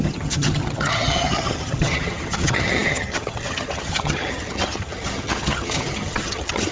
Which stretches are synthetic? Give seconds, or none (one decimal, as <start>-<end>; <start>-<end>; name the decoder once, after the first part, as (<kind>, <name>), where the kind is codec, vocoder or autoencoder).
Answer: 0.0-6.7 (vocoder, HiFi-GAN)